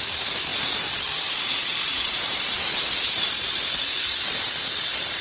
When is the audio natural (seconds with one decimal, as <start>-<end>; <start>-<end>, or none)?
0.0-0.5; 3.6-5.2